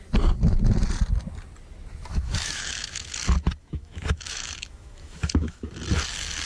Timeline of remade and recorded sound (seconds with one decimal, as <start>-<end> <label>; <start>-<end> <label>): 0.0-2.1 recorded; 2.1-3.1 remade; 3.1-3.6 recorded; 3.6-5.7 remade; 5.7-6.5 recorded